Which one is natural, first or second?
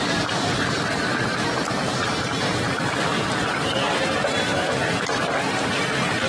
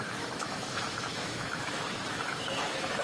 first